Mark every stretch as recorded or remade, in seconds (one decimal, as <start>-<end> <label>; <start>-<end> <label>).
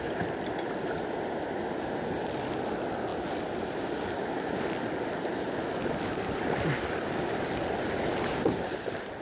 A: 0.0-9.2 recorded